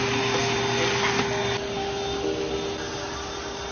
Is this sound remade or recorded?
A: recorded